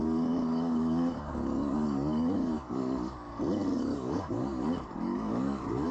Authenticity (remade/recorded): remade